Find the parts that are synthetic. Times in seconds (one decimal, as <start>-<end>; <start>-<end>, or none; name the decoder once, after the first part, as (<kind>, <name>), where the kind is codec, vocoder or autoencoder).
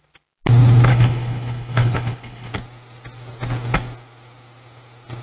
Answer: 0.9-2.5 (codec, HILCodec)